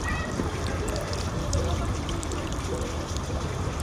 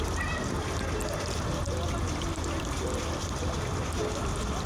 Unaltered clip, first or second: second